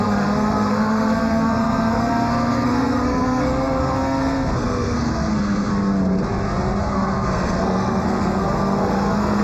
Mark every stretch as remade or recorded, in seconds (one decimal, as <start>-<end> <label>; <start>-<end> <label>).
0.0-5.7 remade; 5.7-6.8 recorded; 6.8-9.4 remade